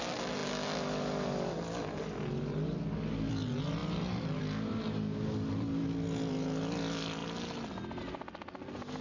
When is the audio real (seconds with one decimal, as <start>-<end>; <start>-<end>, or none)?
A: 0.0-9.0